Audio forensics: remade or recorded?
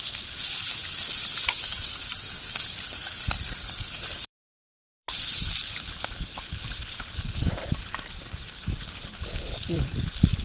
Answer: remade